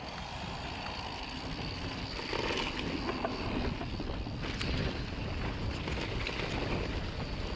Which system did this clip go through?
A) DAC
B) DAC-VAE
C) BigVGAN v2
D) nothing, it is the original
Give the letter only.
D